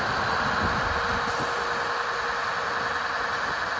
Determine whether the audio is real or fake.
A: real